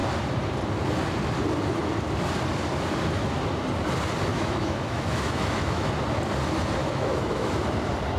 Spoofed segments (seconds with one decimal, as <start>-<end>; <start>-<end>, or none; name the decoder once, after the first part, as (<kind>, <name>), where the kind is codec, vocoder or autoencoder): 4.3-5.9 (autoencoder, DAC-VAE); 6.8-7.5